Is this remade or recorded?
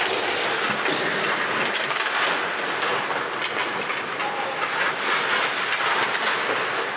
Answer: recorded